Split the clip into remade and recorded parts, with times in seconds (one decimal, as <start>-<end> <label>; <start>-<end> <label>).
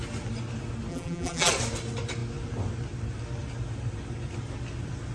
0.0-0.9 recorded; 0.9-1.5 remade; 1.5-5.1 recorded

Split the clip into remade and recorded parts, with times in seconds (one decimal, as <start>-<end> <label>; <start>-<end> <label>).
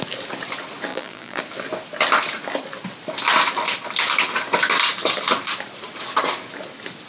0.0-0.9 recorded; 0.9-1.4 remade; 1.4-7.1 recorded